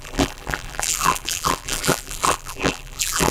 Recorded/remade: remade